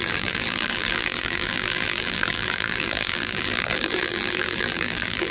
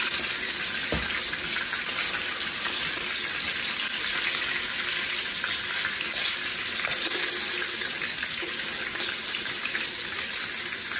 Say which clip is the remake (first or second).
first